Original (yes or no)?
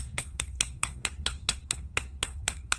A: no